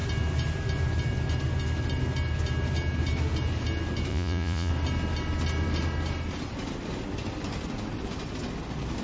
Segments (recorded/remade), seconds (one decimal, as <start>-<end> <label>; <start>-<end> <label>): 0.0-4.1 recorded; 4.1-4.7 remade; 4.7-9.0 recorded